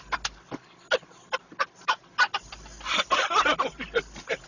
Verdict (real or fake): real